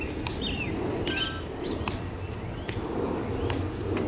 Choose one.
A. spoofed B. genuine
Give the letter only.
B